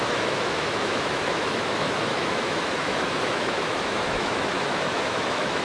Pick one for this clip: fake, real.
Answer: fake